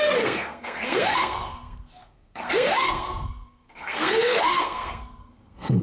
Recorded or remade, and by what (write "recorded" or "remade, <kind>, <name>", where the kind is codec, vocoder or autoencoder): remade, codec, SNAC